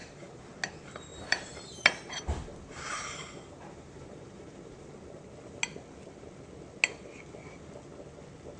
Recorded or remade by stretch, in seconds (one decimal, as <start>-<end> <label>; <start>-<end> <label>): 0.0-0.5 remade; 0.5-1.1 recorded; 1.1-5.2 remade; 5.2-8.6 recorded